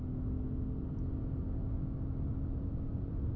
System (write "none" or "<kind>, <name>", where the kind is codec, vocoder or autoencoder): none